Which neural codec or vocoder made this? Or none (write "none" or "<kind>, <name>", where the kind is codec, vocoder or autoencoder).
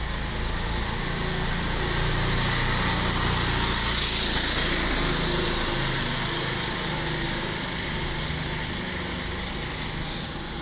none